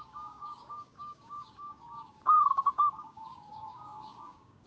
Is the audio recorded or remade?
remade